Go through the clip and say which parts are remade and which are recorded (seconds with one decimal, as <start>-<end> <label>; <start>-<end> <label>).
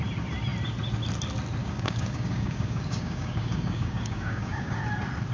0.0-1.6 recorded; 1.6-4.8 remade; 4.8-5.3 recorded